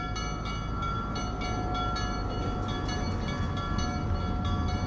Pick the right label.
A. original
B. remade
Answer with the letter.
A